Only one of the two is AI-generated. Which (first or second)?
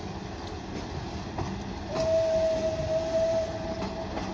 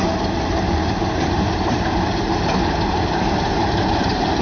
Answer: second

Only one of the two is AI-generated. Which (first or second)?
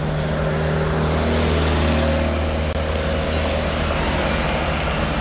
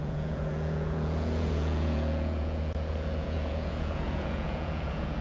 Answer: second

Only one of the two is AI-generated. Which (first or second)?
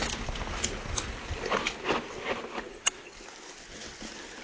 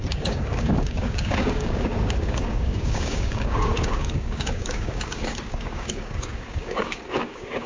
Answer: second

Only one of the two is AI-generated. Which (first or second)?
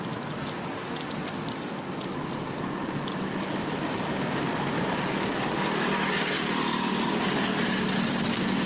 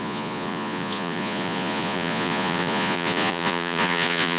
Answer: second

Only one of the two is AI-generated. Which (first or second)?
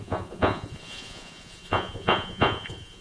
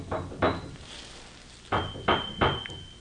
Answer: first